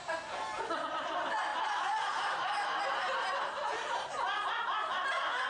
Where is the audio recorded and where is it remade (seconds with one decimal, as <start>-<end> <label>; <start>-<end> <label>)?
0.0-1.5 recorded; 1.5-4.6 remade; 4.6-5.5 recorded